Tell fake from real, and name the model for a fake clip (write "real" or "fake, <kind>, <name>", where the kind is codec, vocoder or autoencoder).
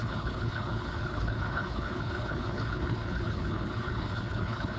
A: fake, codec, HILCodec